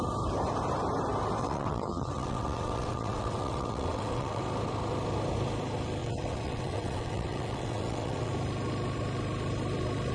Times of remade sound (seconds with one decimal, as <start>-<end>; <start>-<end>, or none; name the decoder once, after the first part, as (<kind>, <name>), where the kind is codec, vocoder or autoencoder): 1.4-4.4 (vocoder, WaveNeXt); 6.0-8.3